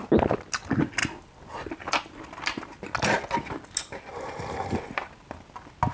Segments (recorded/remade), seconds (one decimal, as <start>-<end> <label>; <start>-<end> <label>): 0.0-5.9 recorded